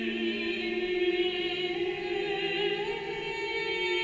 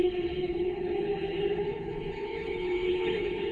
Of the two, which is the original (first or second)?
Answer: first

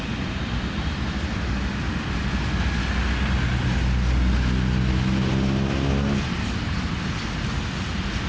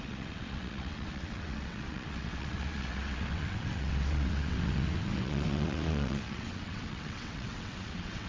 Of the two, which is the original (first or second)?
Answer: first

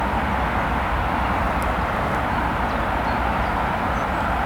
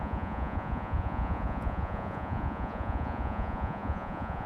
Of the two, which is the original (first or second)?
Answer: first